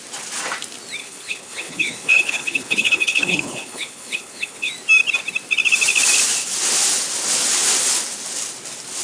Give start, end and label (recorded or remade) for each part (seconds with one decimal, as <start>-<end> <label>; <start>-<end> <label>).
0.0-1.0 recorded; 1.0-4.7 remade; 4.7-9.0 recorded